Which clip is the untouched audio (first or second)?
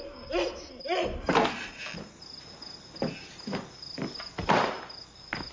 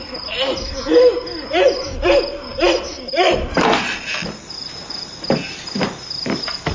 first